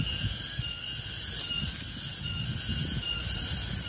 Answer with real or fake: real